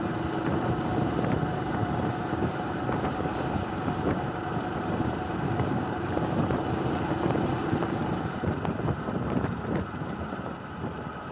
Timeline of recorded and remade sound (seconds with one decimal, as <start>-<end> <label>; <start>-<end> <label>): 0.0-11.3 remade